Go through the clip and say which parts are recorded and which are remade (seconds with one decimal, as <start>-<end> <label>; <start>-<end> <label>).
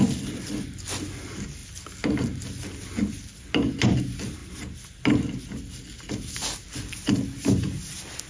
0.0-8.3 recorded